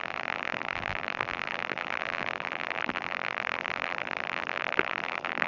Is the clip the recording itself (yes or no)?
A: no